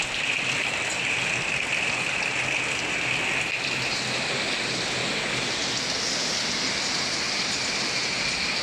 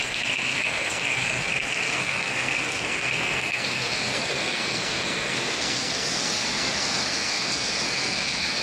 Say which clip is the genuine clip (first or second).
first